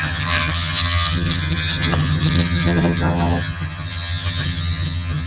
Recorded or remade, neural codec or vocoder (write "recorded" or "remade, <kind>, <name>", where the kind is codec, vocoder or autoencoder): remade, vocoder, HiFi-GAN